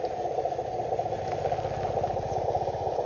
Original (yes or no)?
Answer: yes